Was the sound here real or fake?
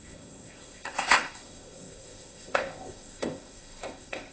fake